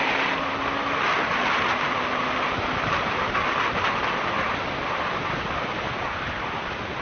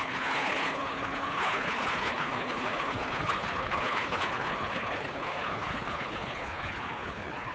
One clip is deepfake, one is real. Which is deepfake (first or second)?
second